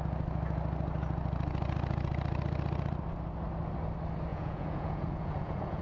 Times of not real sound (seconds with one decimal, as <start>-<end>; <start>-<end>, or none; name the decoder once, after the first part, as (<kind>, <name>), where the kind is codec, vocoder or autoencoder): 4.3-5.8 (vocoder, Vocos)